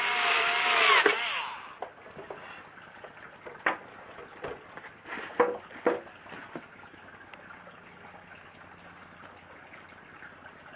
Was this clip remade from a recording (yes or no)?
no